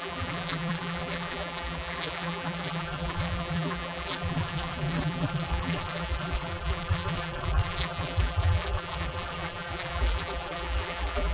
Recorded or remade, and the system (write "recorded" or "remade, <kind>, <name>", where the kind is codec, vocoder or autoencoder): remade, vocoder, BigVGAN v2